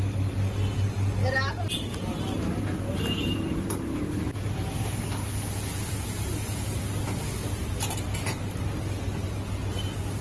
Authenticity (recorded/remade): recorded